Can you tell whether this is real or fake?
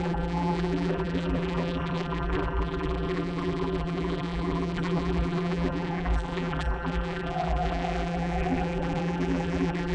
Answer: fake